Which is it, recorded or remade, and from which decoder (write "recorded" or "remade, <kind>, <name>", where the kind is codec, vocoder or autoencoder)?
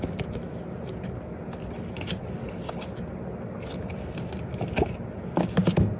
recorded